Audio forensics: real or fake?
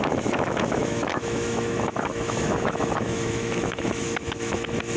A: fake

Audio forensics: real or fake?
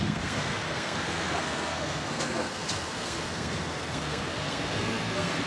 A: fake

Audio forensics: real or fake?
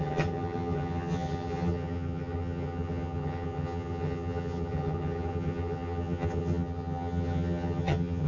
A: fake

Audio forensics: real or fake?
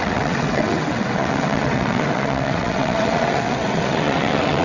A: fake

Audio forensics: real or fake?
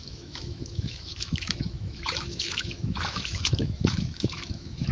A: fake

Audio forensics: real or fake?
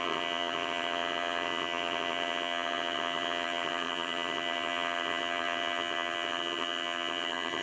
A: fake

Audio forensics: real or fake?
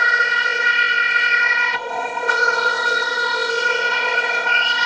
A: fake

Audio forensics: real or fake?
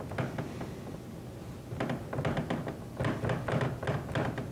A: real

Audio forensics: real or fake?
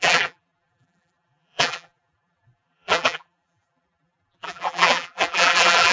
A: fake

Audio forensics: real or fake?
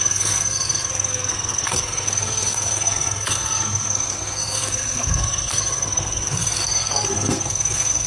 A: fake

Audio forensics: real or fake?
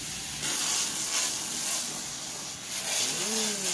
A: real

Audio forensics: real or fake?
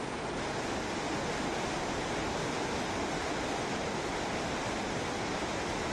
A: real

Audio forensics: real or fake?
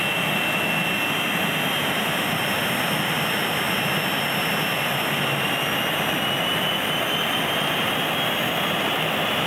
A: real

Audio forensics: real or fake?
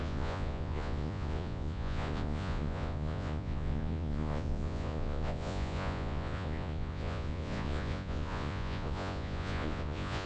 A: fake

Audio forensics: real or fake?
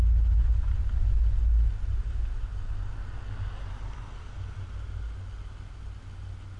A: real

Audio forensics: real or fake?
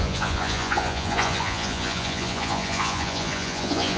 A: fake